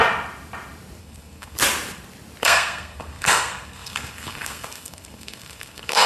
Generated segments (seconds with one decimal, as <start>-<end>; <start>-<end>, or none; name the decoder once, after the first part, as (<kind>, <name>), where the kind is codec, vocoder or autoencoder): 1.0-1.6 (codec, SNAC); 2.4-6.1